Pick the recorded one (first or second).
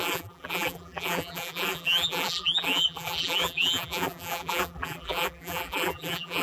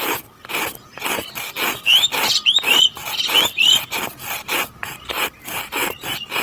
second